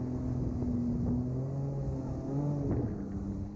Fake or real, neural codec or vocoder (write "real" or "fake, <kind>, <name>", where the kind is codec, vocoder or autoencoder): real